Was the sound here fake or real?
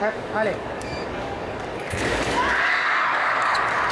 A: fake